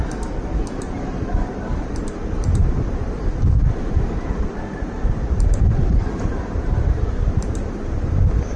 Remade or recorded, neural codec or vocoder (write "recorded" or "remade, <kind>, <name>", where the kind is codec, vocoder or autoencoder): remade, vocoder, BigVGAN v2